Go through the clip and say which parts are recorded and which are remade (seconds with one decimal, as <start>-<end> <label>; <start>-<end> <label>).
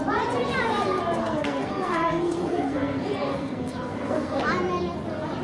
0.0-1.2 recorded; 1.2-4.4 remade; 4.4-5.4 recorded